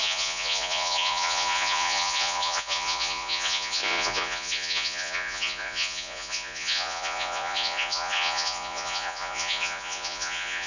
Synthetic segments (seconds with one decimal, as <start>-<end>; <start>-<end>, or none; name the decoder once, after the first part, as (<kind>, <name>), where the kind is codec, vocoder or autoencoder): 0.0-10.7 (vocoder, Vocos)